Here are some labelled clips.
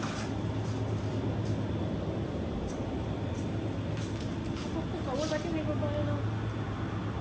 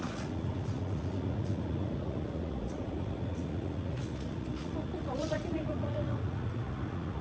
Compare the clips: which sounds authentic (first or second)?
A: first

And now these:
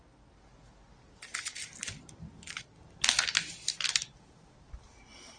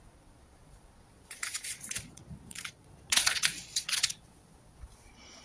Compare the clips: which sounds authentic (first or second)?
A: first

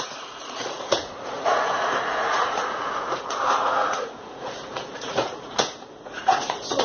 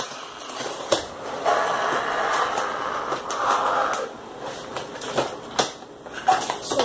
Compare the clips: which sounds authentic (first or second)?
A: second